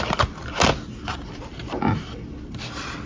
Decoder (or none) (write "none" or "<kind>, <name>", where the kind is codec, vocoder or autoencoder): none